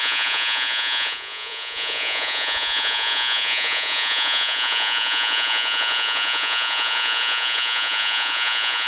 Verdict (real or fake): fake